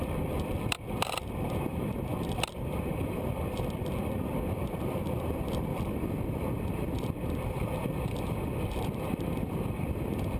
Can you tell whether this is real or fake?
fake